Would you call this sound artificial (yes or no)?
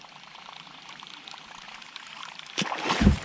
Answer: yes